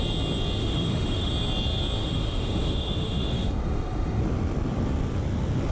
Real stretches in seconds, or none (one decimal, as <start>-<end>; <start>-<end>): 0.0-0.6; 1.3-2.0; 4.2-5.7